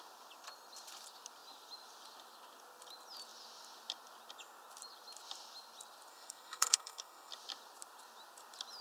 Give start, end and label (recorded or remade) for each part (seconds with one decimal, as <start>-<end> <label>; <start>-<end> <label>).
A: 0.0-6.1 recorded; 6.1-7.3 remade; 7.3-8.8 recorded